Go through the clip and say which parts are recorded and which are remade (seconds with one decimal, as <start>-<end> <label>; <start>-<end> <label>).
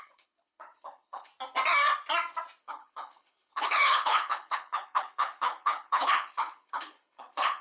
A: 0.0-1.3 remade; 1.3-2.6 recorded; 2.6-7.6 remade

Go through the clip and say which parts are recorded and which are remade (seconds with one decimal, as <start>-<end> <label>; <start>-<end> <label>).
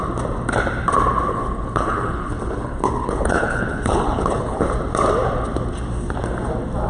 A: 0.0-1.3 recorded; 1.3-4.7 remade; 4.7-6.9 recorded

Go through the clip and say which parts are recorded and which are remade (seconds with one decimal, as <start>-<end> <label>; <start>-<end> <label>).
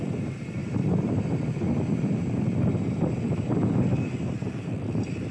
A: 0.0-5.3 remade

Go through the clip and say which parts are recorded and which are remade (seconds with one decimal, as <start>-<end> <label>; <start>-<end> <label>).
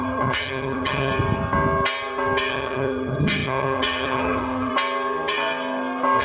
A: 0.0-1.1 remade; 1.1-2.5 recorded; 2.5-4.7 remade; 4.7-6.2 recorded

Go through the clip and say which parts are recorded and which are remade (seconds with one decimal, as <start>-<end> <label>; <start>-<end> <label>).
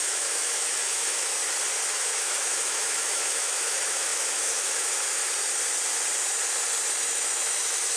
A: 0.0-1.4 remade; 1.4-1.9 recorded; 1.9-5.2 remade; 5.2-7.0 recorded; 7.0-8.0 remade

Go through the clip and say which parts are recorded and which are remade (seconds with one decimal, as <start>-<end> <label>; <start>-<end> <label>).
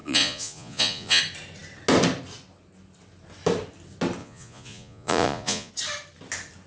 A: 0.0-1.2 remade; 1.2-4.2 recorded; 4.2-5.7 remade; 5.7-6.7 recorded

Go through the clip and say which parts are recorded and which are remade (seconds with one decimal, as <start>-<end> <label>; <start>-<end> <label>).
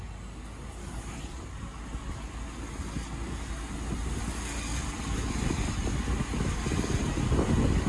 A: 0.0-7.9 recorded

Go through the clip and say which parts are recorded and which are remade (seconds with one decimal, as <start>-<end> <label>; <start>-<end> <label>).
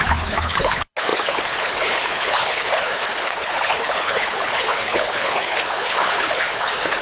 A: 0.0-7.0 remade